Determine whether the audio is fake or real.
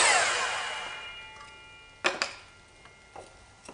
real